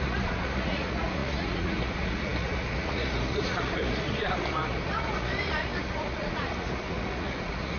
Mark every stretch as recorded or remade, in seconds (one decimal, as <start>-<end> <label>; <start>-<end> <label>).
0.0-7.8 remade